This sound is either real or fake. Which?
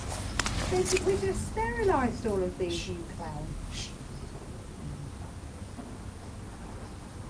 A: real